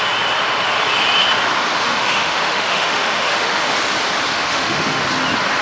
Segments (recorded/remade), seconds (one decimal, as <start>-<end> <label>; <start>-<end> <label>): 0.0-1.8 recorded; 1.8-3.7 remade; 3.7-4.3 recorded; 4.3-5.0 remade; 5.0-5.6 recorded